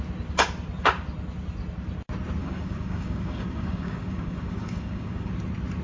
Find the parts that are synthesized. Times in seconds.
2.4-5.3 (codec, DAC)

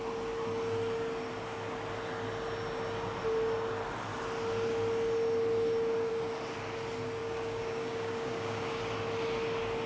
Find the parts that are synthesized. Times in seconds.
7.2-8.8 (codec, DAC)

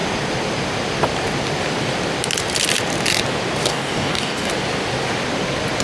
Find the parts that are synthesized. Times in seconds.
3.7-4.5 (codec, DAC)